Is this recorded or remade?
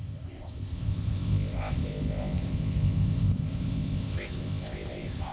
remade